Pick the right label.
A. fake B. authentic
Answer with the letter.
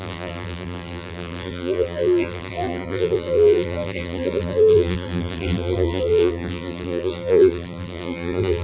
A